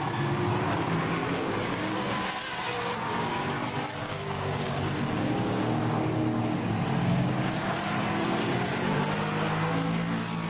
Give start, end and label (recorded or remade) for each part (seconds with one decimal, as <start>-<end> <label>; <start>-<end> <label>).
0.0-1.2 recorded; 1.2-2.3 remade; 2.3-4.0 recorded; 4.0-5.8 remade; 5.8-7.0 recorded; 7.0-7.8 remade; 7.8-10.5 recorded